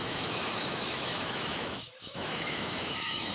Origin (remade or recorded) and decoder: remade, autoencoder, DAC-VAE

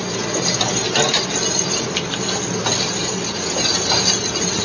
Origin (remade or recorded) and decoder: recorded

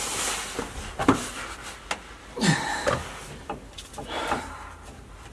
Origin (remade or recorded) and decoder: recorded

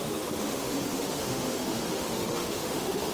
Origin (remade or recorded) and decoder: remade, autoencoder, DAC-VAE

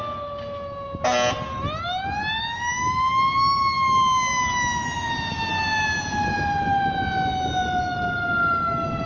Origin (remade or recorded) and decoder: recorded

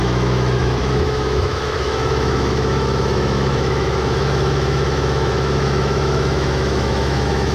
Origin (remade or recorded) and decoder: remade, autoencoder, DAC-VAE